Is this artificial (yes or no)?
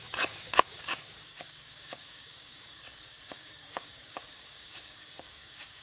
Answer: yes